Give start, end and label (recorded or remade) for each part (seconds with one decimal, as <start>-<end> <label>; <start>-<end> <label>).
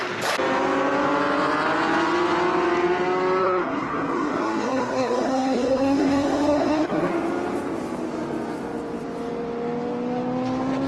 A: 0.0-3.4 recorded; 3.4-7.1 remade; 7.1-10.9 recorded